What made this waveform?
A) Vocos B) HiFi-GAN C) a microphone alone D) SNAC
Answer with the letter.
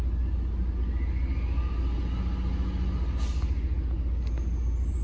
C